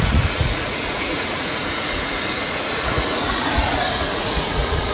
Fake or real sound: fake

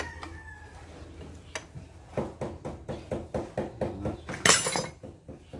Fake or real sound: real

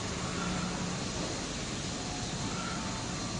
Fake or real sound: real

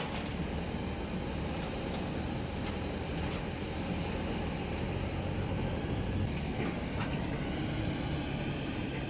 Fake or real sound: real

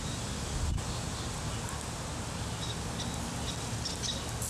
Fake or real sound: real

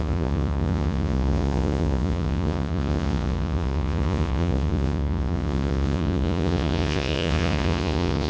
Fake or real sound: fake